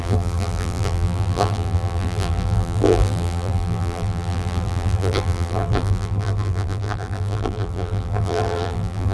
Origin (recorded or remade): remade